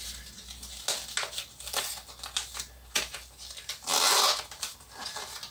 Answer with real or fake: real